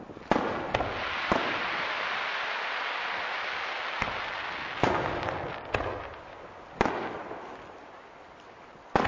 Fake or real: real